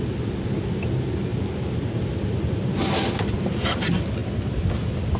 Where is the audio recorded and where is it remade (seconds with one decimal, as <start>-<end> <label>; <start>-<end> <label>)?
0.0-5.2 recorded